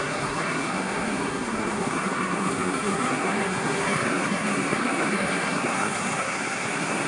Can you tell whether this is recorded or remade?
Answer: remade